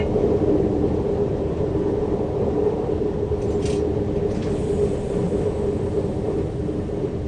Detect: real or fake real